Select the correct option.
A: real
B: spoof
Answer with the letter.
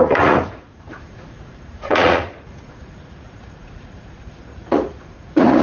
B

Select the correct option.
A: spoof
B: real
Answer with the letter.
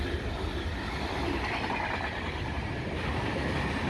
B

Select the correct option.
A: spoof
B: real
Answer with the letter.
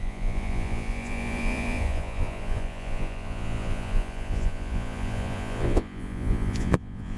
A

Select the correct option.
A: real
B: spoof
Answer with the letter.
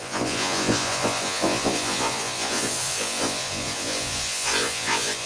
B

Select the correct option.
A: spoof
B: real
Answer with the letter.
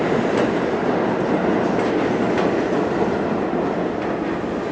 B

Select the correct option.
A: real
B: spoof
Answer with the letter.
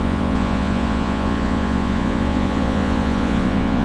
B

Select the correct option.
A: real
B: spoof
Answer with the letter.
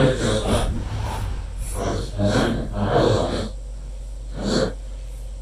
A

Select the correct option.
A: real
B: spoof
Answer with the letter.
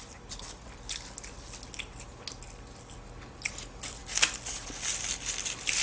A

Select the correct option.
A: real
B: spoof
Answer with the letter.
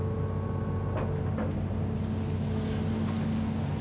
A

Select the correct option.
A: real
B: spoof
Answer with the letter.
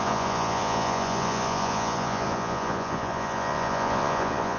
B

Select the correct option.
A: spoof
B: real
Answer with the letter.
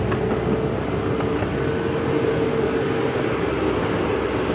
B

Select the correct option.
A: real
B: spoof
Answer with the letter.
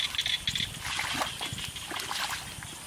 A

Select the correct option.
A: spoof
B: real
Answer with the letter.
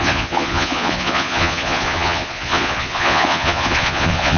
A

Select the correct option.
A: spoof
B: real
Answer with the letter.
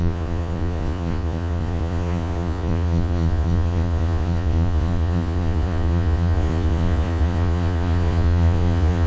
A